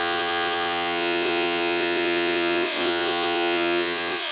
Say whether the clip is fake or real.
fake